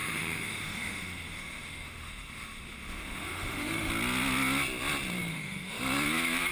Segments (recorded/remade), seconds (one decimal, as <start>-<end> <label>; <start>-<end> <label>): 0.0-3.9 remade; 3.9-5.3 recorded; 5.3-5.8 remade; 5.8-6.5 recorded